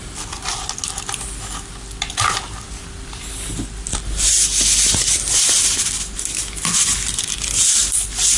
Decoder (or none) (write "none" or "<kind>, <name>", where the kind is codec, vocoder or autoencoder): none